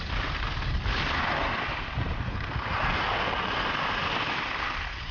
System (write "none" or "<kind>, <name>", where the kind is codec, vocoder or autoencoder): none